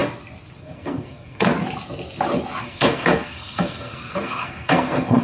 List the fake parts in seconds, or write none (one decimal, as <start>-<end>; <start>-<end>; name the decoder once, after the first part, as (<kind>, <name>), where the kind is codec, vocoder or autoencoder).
0.6-1.5 (codec, SNAC); 2.6-5.2